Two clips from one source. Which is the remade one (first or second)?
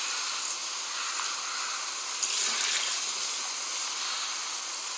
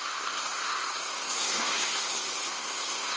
second